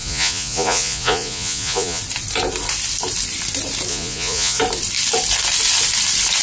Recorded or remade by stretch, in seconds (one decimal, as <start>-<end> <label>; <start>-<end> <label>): 0.0-2.0 remade; 2.0-3.9 recorded; 3.9-4.6 remade; 4.6-6.4 recorded